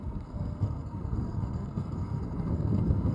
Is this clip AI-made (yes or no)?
yes